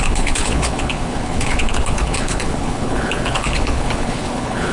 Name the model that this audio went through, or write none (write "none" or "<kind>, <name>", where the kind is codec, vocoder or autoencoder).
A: codec, HILCodec